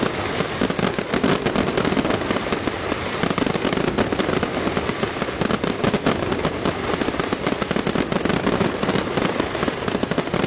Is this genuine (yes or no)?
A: yes